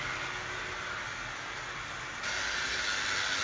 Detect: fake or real real